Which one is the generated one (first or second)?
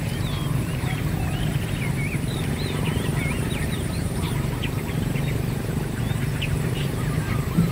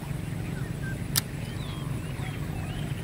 first